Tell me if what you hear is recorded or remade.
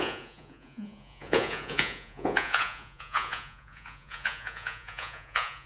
remade